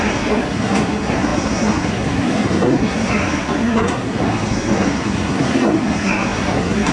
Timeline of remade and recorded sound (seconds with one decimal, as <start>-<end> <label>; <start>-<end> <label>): 0.0-6.9 remade